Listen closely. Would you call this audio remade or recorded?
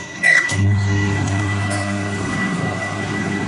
remade